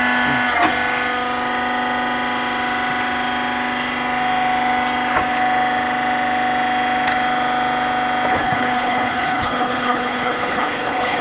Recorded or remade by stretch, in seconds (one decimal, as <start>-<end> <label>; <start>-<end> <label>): 0.0-8.3 recorded; 8.3-11.2 remade